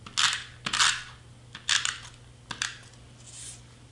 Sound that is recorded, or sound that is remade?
recorded